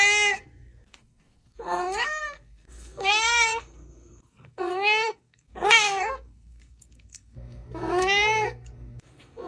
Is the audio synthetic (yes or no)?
yes